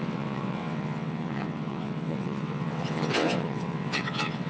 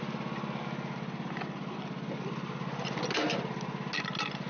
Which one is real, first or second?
second